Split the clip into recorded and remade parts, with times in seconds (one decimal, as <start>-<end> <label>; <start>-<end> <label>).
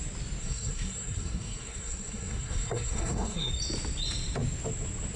0.0-0.4 recorded; 0.4-3.5 remade; 3.5-5.2 recorded